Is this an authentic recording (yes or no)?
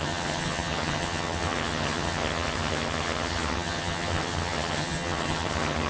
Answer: no